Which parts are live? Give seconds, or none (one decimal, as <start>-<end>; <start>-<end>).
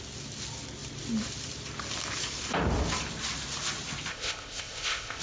0.0-4.1